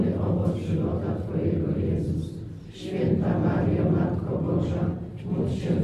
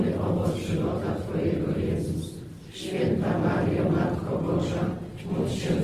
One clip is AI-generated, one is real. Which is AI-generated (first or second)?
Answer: second